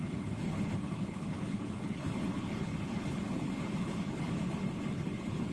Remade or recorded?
remade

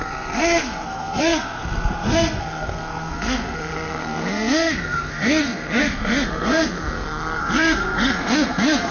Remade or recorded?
remade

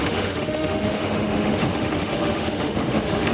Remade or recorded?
remade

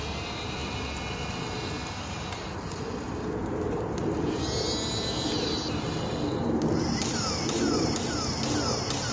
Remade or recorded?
recorded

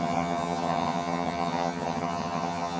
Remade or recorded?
remade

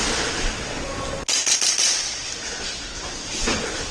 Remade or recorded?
recorded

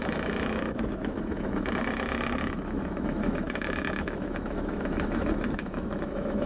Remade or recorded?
remade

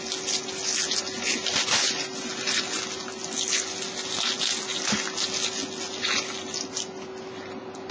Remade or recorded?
recorded